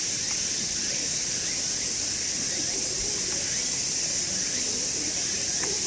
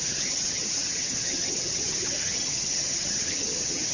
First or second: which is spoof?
second